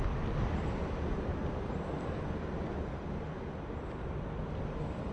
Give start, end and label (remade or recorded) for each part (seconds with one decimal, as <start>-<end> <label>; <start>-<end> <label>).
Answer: 0.0-5.1 recorded

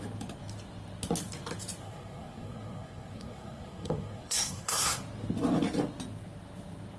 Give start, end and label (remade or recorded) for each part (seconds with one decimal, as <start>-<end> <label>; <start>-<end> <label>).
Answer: 0.0-1.8 recorded; 1.8-5.0 remade; 5.0-7.0 recorded